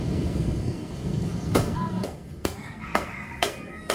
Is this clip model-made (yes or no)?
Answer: yes